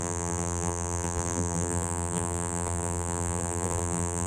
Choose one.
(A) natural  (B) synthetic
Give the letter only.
B